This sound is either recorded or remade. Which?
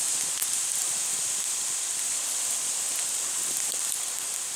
recorded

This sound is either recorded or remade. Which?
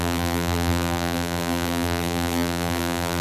remade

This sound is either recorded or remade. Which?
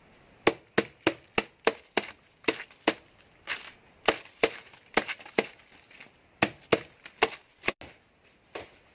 recorded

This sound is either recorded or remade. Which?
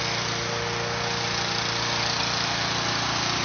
recorded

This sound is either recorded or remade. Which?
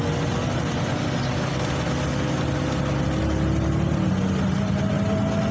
recorded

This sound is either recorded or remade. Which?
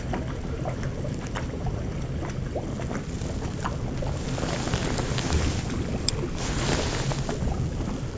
recorded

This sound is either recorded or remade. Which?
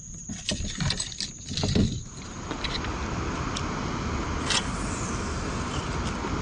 recorded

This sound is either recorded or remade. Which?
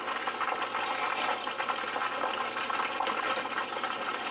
recorded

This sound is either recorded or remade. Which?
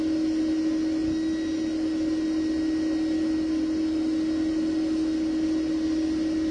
recorded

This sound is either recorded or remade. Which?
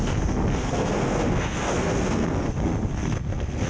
remade